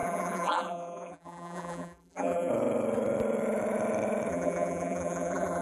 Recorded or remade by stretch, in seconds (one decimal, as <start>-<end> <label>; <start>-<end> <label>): 0.0-2.5 remade; 2.5-4.3 recorded; 4.3-5.6 remade